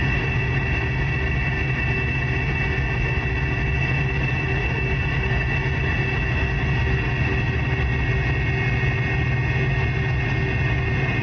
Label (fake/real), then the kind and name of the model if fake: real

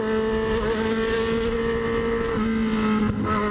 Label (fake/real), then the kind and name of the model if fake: real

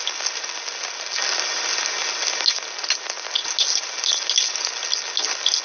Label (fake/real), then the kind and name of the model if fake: real